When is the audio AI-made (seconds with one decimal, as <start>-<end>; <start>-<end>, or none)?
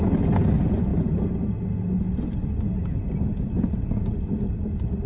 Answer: none